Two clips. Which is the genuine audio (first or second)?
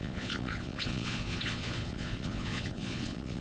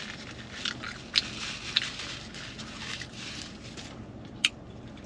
second